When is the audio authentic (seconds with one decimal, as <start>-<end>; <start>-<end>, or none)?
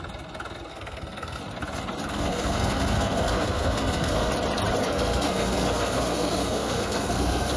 0.0-0.7; 1.4-2.1; 4.3-4.8